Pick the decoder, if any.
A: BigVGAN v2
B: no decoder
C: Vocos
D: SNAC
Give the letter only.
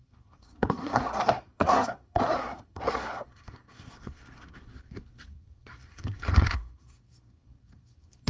D